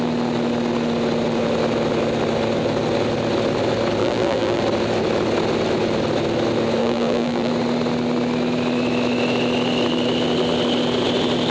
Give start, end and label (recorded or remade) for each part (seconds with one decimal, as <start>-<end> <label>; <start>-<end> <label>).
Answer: 0.0-4.0 recorded; 4.0-4.6 remade; 4.6-6.8 recorded; 6.8-7.5 remade; 7.5-11.5 recorded